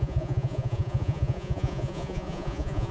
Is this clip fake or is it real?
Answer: fake